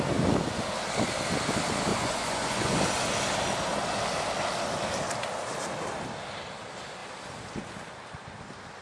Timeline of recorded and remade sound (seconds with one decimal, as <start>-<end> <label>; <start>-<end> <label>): 0.0-1.9 recorded; 1.9-2.8 remade; 2.8-8.8 recorded